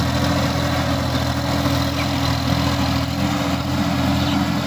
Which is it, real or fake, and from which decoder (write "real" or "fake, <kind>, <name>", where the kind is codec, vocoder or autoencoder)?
real